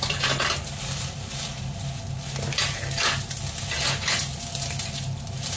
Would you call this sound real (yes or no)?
yes